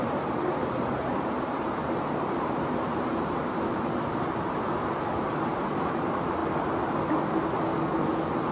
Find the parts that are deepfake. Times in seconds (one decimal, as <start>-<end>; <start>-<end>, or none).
0.0-6.4